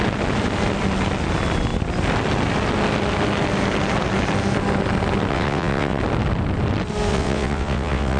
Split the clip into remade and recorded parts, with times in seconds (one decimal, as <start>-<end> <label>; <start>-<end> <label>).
0.0-5.3 recorded; 5.3-6.0 remade; 6.0-7.1 recorded; 7.1-8.2 remade